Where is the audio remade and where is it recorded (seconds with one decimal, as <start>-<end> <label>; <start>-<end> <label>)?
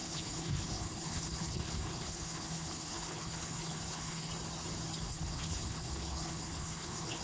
0.0-4.3 remade; 4.3-5.1 recorded; 5.1-7.2 remade